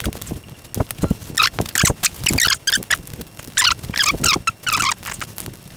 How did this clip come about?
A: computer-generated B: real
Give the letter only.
B